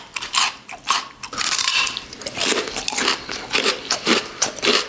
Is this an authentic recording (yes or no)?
no